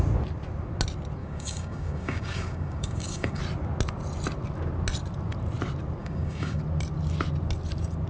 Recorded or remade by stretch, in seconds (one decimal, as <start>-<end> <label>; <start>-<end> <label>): 0.0-1.2 recorded; 1.2-3.4 remade; 3.4-6.0 recorded; 6.0-6.6 remade; 6.6-8.1 recorded